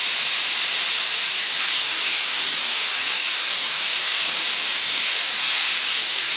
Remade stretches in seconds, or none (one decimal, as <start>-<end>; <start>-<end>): 0.9-6.4